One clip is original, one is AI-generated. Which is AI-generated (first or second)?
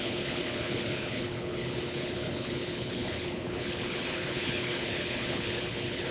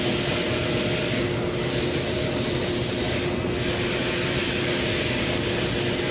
first